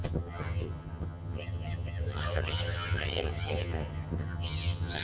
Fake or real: fake